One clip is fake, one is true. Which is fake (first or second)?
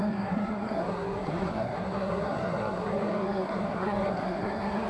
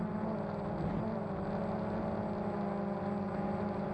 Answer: first